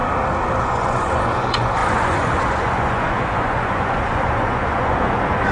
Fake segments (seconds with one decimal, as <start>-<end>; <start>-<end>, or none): 0.6-5.5